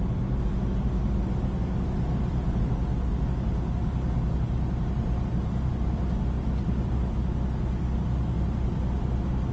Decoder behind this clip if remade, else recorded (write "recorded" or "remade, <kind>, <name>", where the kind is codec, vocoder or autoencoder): recorded